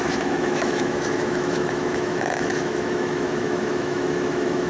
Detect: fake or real fake